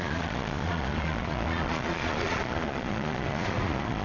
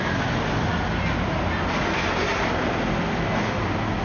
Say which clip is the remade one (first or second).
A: first